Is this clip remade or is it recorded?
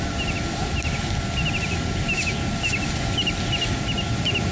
recorded